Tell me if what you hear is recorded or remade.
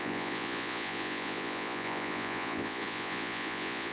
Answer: remade